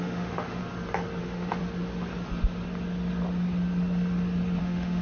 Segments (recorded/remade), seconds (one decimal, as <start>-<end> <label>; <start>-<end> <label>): 0.0-0.6 remade; 0.6-1.2 recorded; 1.2-1.6 remade; 1.6-4.6 recorded; 4.6-5.0 remade